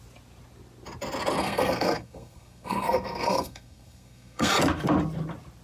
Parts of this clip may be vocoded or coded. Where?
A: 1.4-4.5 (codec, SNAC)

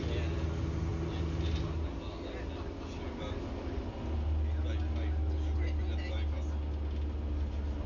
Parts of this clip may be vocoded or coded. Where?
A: none

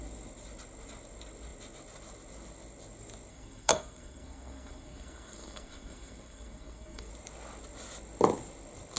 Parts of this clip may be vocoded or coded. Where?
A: 3.3-7.1 (codec, SNAC)

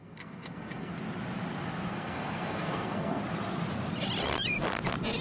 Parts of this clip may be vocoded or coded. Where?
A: 0.0-0.9 (codec, SNAC); 1.9-3.2